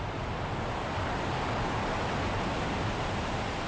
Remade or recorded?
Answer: recorded